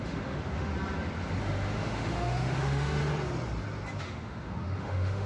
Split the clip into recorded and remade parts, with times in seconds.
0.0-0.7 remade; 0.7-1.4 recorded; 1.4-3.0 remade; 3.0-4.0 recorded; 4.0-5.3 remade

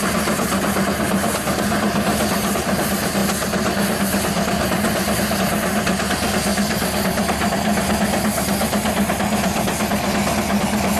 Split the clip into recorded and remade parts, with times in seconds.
0.0-11.0 recorded

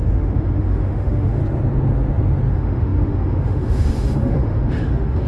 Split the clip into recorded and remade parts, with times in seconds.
0.0-1.4 remade; 1.4-2.5 recorded; 2.5-5.3 remade